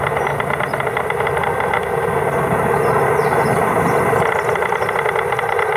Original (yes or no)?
yes